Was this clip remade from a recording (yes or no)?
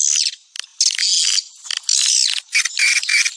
no